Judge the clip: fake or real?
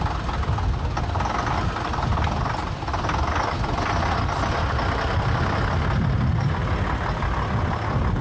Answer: real